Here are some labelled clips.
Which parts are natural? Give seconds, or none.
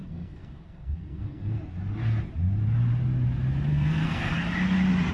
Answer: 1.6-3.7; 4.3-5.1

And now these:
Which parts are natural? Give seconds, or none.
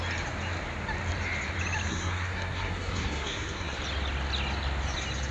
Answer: 0.0-1.9; 3.8-5.3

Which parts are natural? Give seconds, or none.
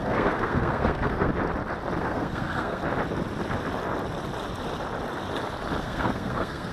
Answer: 1.3-2.0; 2.8-5.8